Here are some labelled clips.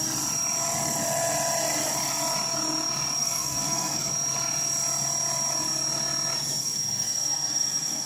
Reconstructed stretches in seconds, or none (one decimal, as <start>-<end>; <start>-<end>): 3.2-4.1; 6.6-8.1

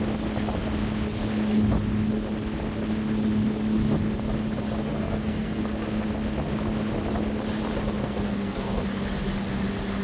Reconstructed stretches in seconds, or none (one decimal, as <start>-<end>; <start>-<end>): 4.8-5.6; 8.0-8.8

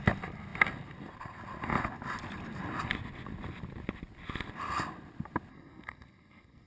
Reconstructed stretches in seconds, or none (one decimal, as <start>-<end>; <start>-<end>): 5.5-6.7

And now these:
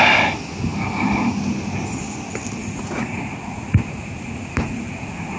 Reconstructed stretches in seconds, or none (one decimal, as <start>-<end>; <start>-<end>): 2.6-5.4

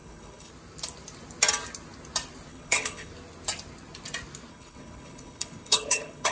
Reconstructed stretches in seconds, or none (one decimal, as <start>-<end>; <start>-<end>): 0.0-0.5; 2.5-3.1; 4.5-6.3